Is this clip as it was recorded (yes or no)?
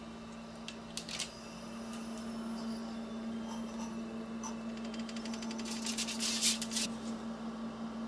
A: yes